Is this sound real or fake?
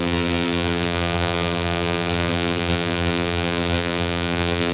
fake